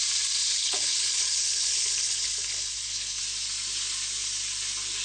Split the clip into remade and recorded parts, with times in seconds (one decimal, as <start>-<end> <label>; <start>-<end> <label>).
0.0-0.4 recorded; 0.4-3.2 remade; 3.2-5.0 recorded